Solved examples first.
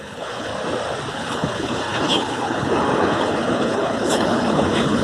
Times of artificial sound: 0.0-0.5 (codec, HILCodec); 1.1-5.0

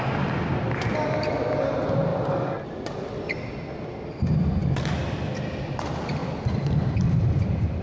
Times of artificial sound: 2.1-2.9 (vocoder, BigVGAN v2); 4.6-5.6; 6.2-7.8

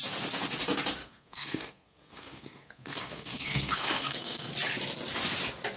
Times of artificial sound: 1.0-4.5 (codec, SNAC)

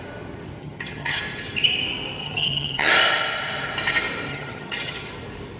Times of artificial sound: 0.6-1.2 (vocoder, HiFi-GAN); 2.2-2.9; 4.3-5.1

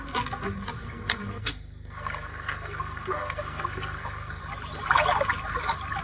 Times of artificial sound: 0.8-4.4 (codec, SNAC)

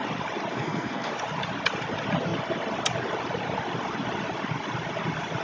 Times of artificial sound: 0.5-1.1 (codec, SNAC)